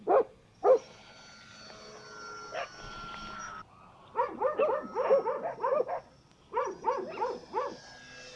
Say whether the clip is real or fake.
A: real